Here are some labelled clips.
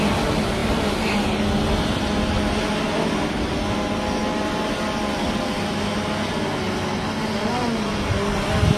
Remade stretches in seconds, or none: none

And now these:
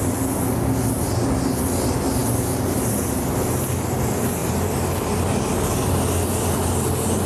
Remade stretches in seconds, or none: none

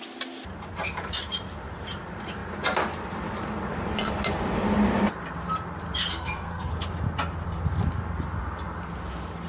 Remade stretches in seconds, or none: 6.1-6.7 (codec, SNAC)

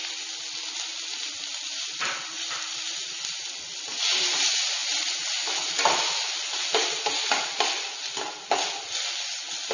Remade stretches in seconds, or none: none

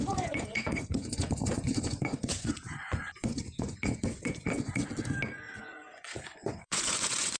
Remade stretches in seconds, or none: 0.0-4.9 (vocoder, Vocos); 5.6-7.4